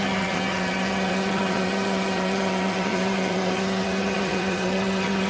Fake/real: fake